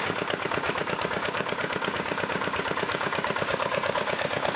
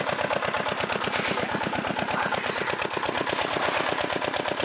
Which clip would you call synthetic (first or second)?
first